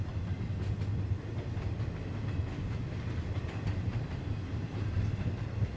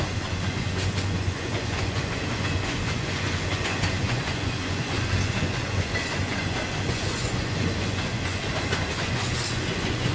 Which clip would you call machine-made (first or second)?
second